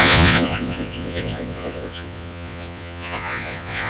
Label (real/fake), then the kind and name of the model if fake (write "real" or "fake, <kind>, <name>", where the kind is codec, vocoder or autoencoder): fake, vocoder, Vocos